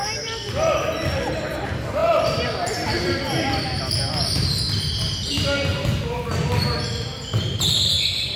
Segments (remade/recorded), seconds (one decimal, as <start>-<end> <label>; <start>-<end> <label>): 0.0-0.7 remade; 0.7-2.0 recorded; 2.0-4.6 remade; 4.6-5.7 recorded; 5.7-6.2 remade; 6.2-8.4 recorded